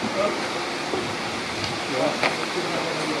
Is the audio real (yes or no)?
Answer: yes